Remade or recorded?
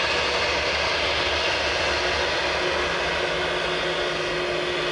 recorded